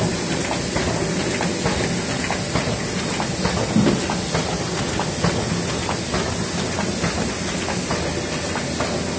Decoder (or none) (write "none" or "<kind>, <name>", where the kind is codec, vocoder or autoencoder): none